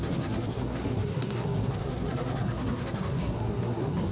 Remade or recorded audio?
remade